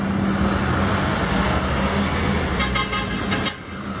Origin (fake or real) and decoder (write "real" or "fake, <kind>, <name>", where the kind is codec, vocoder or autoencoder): real